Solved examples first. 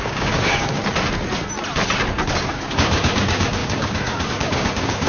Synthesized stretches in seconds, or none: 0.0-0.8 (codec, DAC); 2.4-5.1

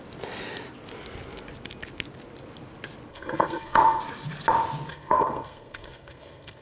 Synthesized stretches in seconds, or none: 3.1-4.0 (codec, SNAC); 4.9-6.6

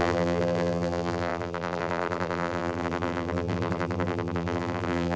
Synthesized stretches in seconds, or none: 0.0-5.2 (vocoder, BigVGAN v2)

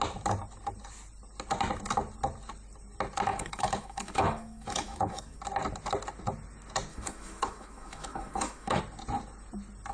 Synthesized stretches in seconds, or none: 3.3-5.4 (autoencoder, DAC-VAE); 6.9-8.8

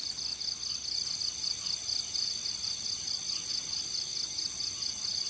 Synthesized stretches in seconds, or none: none